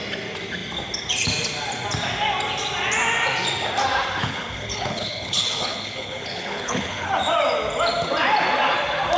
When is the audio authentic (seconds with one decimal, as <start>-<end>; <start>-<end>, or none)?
0.0-4.2; 7.1-9.2

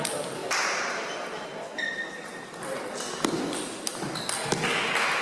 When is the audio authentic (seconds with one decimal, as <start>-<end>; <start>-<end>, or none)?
0.0-5.2

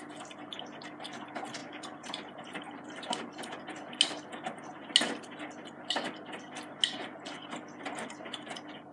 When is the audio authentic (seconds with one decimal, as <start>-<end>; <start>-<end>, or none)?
0.0-1.6; 3.6-8.9

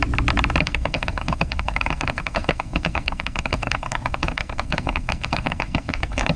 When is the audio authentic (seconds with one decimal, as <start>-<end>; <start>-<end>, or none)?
0.0-0.6

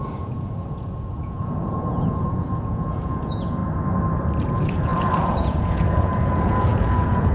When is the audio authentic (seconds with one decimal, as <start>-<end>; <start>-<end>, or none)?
3.6-4.5